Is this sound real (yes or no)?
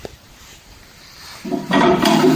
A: no